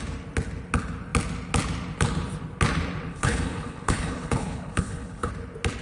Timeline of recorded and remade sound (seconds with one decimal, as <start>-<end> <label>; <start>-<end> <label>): 0.0-3.1 recorded; 3.1-5.3 remade; 5.3-5.8 recorded